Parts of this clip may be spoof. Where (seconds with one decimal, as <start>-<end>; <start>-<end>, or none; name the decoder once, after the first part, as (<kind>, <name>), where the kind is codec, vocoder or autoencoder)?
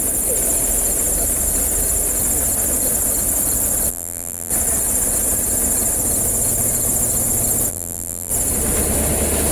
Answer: 3.9-4.5 (vocoder, BigVGAN v2); 7.7-8.3